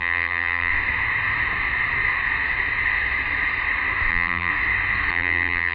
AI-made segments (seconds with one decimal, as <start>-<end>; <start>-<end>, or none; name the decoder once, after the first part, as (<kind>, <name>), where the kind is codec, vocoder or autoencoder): 0.0-0.7 (vocoder, BigVGAN v2); 4.1-4.5; 5.1-5.7